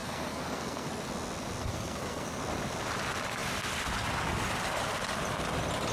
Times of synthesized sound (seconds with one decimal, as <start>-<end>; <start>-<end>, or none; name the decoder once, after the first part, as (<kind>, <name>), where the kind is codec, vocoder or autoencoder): 0.0-0.9 (codec, SNAC); 1.6-2.4